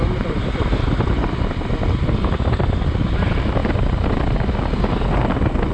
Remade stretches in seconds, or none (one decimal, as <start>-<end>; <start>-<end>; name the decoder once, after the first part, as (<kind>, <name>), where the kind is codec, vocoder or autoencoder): none